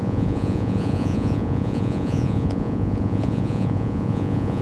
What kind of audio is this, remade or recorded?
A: remade